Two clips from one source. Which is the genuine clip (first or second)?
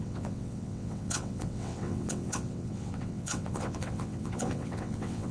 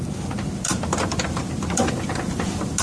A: second